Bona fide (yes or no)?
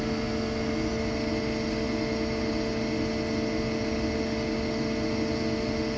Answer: yes